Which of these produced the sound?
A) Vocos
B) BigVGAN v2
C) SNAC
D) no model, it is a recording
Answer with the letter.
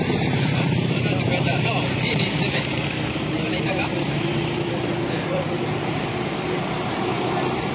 B